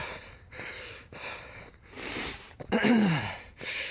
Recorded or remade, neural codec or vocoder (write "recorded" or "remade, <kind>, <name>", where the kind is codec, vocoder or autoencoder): remade, vocoder, BigVGAN v2